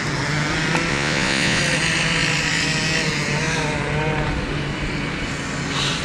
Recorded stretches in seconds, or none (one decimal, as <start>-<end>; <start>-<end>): 0.0-0.9; 1.6-6.0